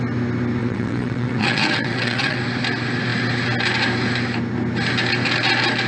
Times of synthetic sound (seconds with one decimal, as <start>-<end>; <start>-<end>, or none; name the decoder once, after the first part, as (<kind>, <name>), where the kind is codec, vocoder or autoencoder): 0.6-2.4 (vocoder, WaveNeXt)